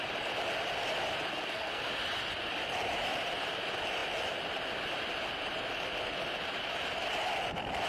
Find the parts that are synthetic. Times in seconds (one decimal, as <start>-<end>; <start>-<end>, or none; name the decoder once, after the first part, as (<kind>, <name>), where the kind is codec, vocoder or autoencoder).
1.3-1.8 (codec, SNAC)